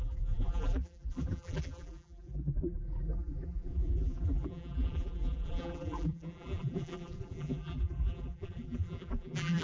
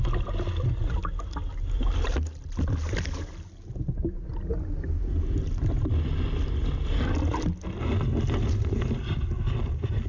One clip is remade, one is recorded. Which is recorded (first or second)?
second